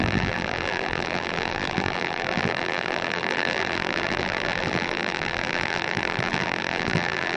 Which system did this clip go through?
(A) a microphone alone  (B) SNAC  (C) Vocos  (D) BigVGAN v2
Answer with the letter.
D